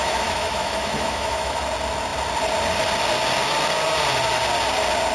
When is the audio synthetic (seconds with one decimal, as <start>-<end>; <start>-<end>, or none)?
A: 0.0-1.6